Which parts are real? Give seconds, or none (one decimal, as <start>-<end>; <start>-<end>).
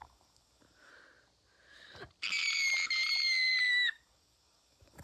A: 0.9-3.7